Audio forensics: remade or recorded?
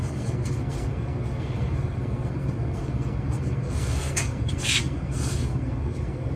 remade